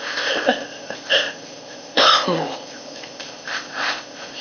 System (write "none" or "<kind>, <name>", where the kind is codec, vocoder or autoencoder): codec, ZipCodec